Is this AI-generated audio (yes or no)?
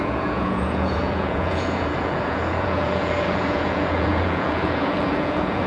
yes